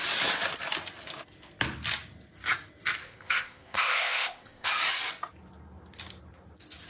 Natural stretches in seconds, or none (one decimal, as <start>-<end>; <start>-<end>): 0.0-3.0; 4.7-6.9